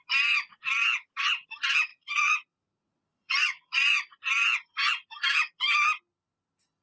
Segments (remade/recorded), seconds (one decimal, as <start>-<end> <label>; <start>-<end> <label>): 0.0-1.9 recorded; 1.9-3.9 remade; 3.9-6.8 recorded